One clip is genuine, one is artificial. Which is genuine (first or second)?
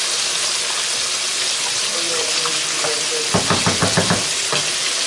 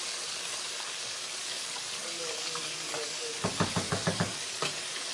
first